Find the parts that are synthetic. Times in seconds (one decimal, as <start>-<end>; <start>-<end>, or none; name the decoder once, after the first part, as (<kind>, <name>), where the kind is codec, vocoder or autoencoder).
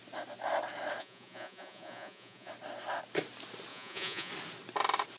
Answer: 1.0-2.5 (vocoder, Vocos); 3.7-4.3